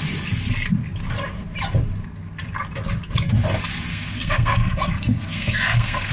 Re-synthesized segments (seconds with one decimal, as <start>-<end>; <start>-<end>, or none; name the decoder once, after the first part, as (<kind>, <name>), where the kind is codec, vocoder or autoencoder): 3.9-6.1 (codec, SNAC)